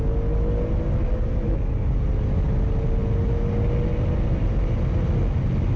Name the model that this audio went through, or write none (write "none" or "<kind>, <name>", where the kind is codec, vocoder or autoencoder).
none